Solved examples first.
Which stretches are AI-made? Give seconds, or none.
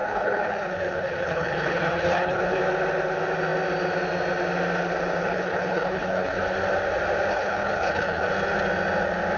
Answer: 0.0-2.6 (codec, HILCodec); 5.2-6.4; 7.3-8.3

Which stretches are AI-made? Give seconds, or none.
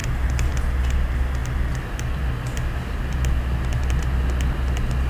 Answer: none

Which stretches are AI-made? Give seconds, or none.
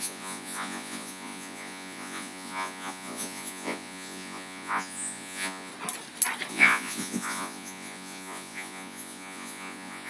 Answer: 0.0-5.7 (vocoder, Vocos); 6.5-10.1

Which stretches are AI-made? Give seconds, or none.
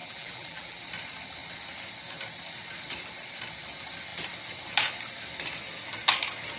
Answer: 0.0-0.8 (vocoder, BigVGAN v2)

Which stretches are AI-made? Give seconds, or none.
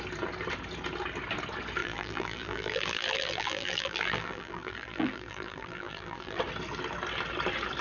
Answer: 1.8-6.4 (vocoder, BigVGAN v2)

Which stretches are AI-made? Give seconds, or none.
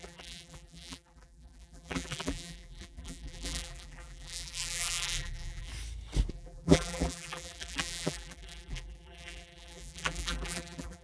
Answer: 0.0-5.7 (vocoder, BigVGAN v2); 6.3-11.0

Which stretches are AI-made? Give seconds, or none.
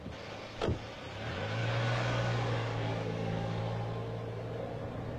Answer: 1.6-3.6 (codec, DAC)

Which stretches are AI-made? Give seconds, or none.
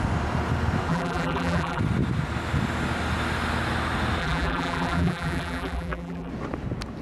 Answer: 0.9-1.8 (vocoder, BigVGAN v2); 4.2-6.3